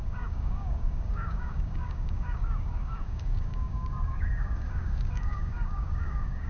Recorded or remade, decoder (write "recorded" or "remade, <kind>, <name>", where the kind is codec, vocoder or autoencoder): remade, codec, DAC